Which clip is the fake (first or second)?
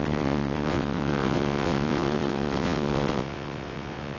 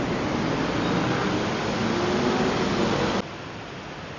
first